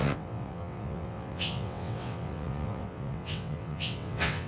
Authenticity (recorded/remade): remade